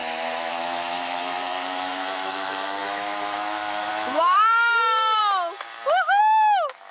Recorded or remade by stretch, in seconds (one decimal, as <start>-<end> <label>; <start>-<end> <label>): 0.0-5.2 remade; 5.2-6.2 recorded; 6.2-6.9 remade

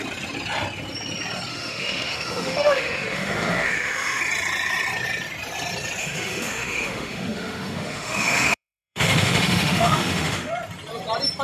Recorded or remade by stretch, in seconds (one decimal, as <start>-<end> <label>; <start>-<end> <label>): 0.0-1.5 recorded; 1.5-4.2 remade; 4.2-6.0 recorded; 6.0-10.5 remade; 10.5-11.4 recorded

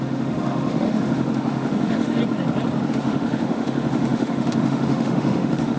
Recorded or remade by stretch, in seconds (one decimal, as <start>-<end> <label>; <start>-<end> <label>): 0.0-2.2 remade; 2.2-2.9 recorded; 2.9-5.8 remade

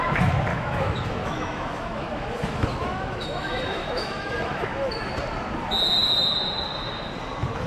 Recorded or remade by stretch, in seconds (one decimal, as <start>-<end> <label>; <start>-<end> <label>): 0.0-0.5 recorded; 0.5-5.1 remade; 5.1-7.7 recorded

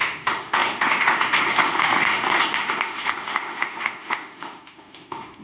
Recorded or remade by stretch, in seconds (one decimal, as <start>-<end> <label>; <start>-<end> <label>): 0.0-5.4 remade

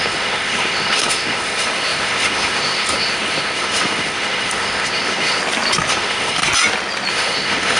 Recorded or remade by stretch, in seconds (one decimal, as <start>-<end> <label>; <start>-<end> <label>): 0.0-5.4 remade; 5.4-5.9 recorded; 5.9-6.4 remade; 6.4-7.1 recorded; 7.1-7.8 remade